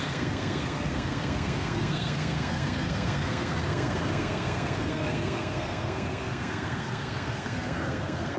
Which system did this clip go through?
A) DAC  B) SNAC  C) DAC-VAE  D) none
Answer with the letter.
B